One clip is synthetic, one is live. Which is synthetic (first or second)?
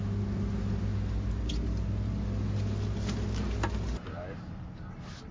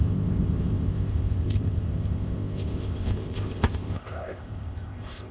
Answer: second